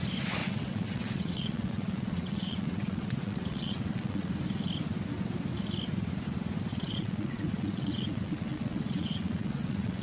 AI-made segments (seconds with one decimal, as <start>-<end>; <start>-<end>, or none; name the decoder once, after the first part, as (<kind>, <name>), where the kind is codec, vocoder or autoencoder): 0.4-4.3 (vocoder, WaveNeXt); 6.7-10.0